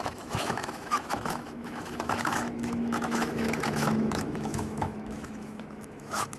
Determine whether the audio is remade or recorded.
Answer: remade